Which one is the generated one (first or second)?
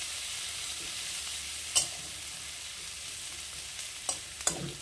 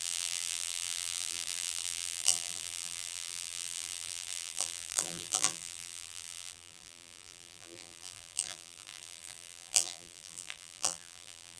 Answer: second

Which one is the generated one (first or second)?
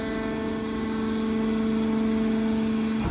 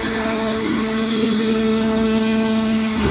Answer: second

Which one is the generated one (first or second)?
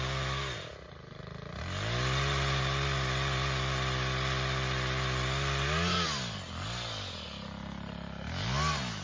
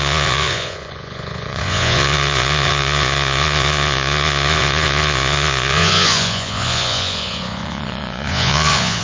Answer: second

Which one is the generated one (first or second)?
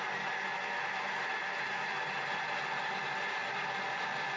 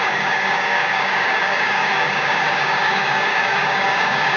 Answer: second